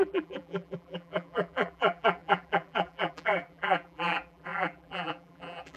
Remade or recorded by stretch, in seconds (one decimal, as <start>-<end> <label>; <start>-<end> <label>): 0.0-5.8 remade